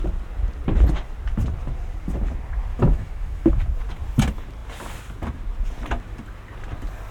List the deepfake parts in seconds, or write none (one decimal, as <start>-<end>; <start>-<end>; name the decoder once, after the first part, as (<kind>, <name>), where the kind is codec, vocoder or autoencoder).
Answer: 2.7-3.5 (autoencoder, DAC-VAE)